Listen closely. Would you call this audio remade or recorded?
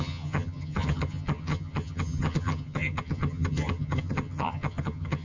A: remade